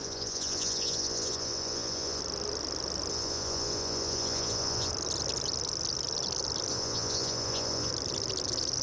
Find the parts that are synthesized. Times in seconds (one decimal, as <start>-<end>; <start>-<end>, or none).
0.0-2.2; 3.1-4.9; 6.7-7.9